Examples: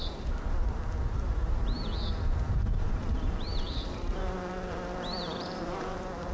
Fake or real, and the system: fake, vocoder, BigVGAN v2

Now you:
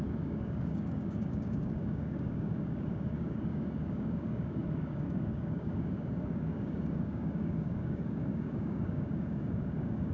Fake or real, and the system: fake, codec, DAC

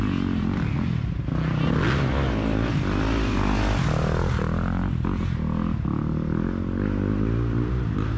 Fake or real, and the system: real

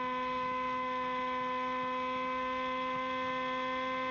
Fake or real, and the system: real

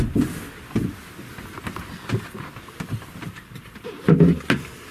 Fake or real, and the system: real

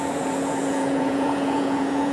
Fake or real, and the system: fake, vocoder, Vocos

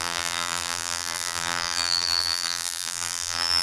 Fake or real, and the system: fake, vocoder, BigVGAN v2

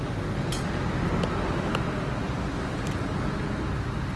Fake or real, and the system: real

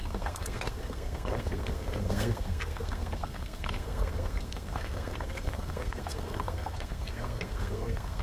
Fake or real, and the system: fake, codec, SNAC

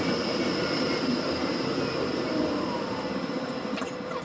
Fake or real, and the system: fake, vocoder, BigVGAN v2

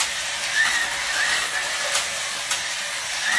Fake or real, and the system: real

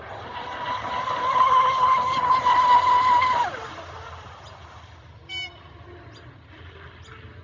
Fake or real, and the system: real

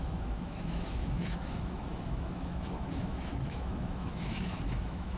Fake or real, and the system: fake, autoencoder, DAC-VAE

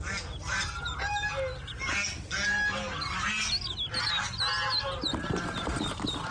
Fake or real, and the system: real